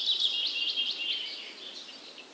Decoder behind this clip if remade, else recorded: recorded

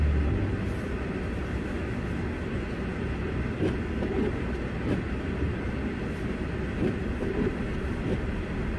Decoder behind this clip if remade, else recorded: recorded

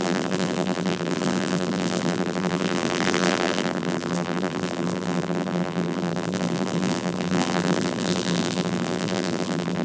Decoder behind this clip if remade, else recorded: remade, vocoder, BigVGAN v2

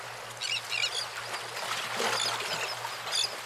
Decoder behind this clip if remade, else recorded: recorded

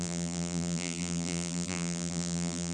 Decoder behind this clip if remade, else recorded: remade, vocoder, BigVGAN v2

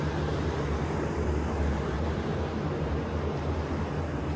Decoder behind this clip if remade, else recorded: remade, vocoder, BigVGAN v2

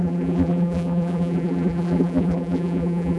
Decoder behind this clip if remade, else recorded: remade, vocoder, BigVGAN v2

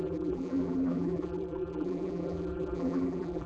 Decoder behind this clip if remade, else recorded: remade, vocoder, BigVGAN v2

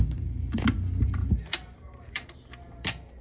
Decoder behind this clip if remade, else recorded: remade, vocoder, BigVGAN v2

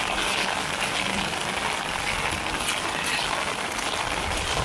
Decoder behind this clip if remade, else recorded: recorded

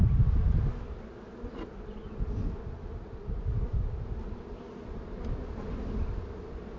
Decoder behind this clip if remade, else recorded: recorded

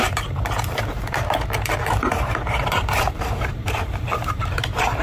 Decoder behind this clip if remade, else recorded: remade, vocoder, BigVGAN v2